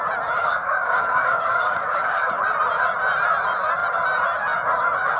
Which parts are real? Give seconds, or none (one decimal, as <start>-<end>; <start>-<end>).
0.0-0.4; 2.3-5.2